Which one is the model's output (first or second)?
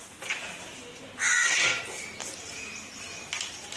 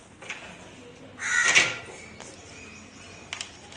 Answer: first